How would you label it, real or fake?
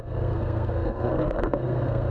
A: fake